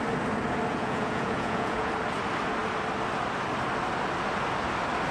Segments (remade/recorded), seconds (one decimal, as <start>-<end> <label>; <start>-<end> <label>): 0.0-0.7 recorded; 0.7-1.9 remade; 1.9-5.1 recorded